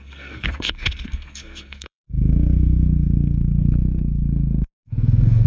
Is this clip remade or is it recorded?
remade